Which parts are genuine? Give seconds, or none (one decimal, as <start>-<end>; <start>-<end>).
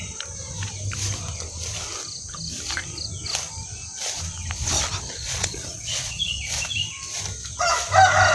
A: 0.0-5.2; 6.3-8.3